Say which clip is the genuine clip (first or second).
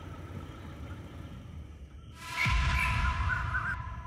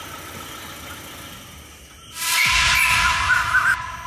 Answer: second